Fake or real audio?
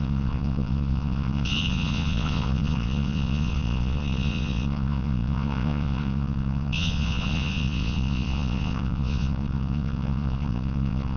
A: fake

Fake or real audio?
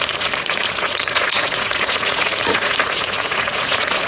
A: fake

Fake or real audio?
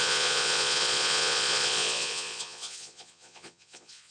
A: fake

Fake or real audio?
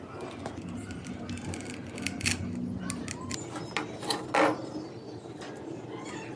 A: real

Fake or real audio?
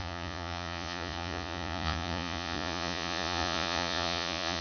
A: fake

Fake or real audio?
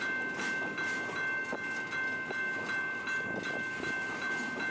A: real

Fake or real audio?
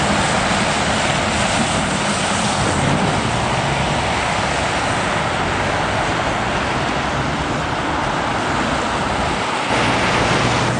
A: real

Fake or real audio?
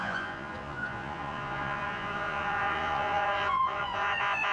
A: fake